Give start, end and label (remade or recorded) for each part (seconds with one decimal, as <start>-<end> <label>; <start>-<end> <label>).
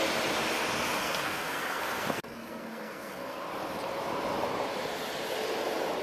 0.0-1.0 recorded; 1.0-3.5 remade; 3.5-6.0 recorded